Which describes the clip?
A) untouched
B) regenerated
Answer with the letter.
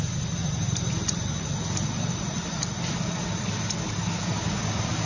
A